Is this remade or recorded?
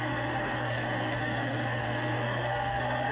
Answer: remade